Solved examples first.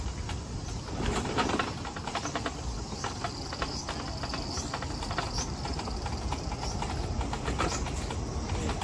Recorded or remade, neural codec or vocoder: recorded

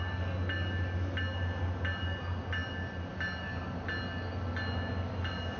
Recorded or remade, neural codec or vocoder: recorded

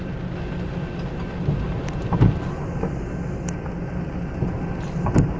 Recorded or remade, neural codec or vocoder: recorded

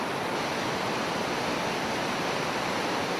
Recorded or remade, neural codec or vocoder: recorded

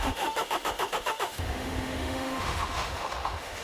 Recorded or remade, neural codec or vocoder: remade, autoencoder, DAC-VAE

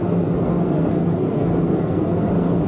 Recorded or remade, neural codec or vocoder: remade, codec, SNAC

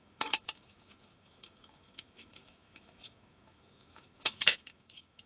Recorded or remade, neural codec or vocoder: remade, autoencoder, DAC-VAE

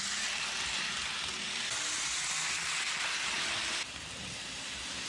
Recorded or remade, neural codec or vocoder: recorded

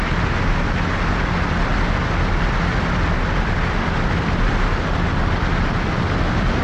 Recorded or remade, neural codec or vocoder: recorded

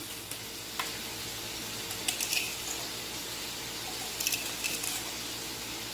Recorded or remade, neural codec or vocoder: recorded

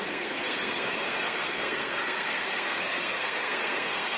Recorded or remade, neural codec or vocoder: remade, codec, SNAC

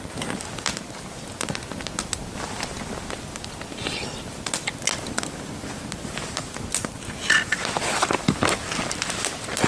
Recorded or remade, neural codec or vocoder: recorded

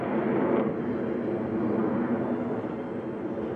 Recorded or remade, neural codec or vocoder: recorded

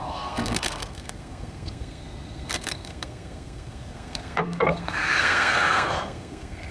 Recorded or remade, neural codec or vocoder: remade, codec, SNAC